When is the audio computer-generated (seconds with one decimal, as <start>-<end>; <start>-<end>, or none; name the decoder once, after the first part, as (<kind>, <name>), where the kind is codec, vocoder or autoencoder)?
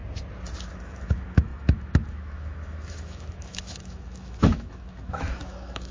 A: 0.7-5.9 (autoencoder, DAC-VAE)